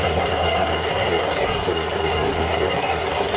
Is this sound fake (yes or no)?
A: yes